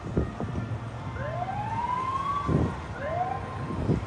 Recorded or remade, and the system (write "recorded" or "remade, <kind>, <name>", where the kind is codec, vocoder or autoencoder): remade, vocoder, BigVGAN v2